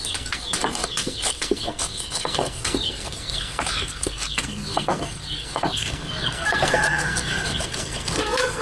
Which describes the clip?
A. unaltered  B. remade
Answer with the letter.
B